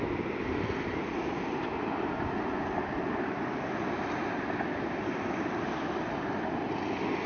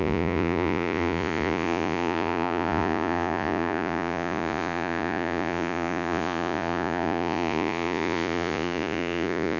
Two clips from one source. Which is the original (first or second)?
first